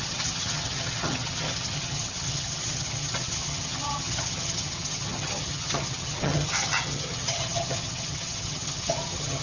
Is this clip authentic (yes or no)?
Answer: no